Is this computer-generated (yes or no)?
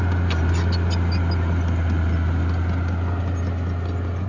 no